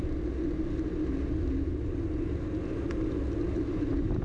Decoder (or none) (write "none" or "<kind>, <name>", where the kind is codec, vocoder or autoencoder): none